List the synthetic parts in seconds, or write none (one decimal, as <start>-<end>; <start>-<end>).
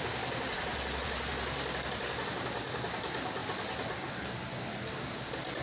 0.7-1.3